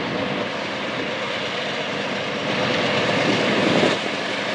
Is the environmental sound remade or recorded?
remade